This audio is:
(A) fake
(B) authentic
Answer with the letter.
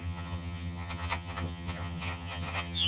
A